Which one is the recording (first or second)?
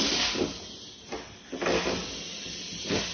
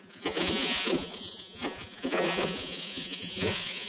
first